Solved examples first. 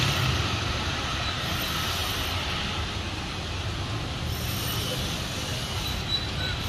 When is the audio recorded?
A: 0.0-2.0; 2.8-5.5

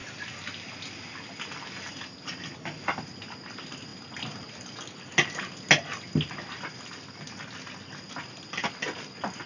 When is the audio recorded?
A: 0.0-9.5

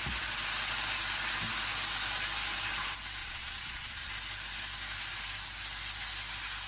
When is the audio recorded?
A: 0.0-3.2; 4.1-6.7

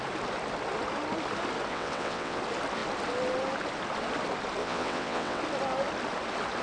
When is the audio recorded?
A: 0.0-1.7; 2.4-4.6; 5.4-6.6